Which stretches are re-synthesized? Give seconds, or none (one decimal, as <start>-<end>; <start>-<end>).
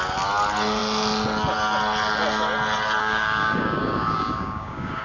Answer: 3.0-5.0